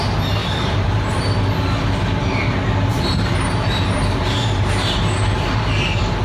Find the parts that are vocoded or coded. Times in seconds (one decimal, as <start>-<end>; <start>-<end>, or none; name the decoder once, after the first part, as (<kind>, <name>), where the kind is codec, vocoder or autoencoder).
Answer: 0.4-1.1 (vocoder, BigVGAN v2); 2.9-6.2